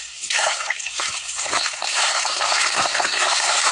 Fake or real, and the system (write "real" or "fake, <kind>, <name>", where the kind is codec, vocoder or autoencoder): fake, codec, SNAC